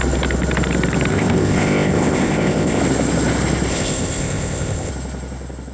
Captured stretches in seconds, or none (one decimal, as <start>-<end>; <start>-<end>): 0.0-1.1; 2.8-3.7; 4.9-5.7